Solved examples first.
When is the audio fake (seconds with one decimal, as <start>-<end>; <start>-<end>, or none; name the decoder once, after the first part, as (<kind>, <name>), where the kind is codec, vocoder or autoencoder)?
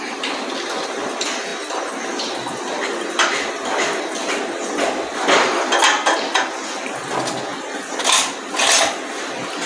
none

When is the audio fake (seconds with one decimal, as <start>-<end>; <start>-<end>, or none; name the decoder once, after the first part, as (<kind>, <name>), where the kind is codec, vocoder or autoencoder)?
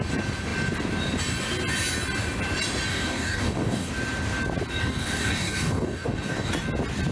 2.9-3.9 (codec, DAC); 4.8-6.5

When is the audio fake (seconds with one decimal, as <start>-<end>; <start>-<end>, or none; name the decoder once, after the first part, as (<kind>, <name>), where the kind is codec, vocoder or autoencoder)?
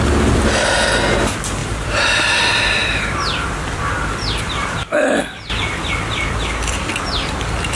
1.6-2.4 (vocoder, BigVGAN v2); 2.8-6.9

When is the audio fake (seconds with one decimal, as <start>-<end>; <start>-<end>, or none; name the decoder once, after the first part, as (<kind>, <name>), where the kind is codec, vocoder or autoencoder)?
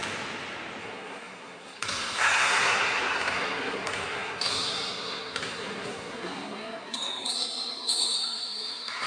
0.8-9.1 (codec, SNAC)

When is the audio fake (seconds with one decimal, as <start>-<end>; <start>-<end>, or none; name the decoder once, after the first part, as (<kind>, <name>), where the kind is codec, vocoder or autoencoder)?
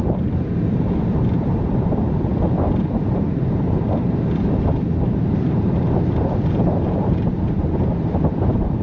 0.0-2.3 (vocoder, BigVGAN v2); 2.8-8.8